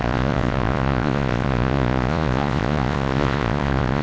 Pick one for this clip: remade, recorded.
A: remade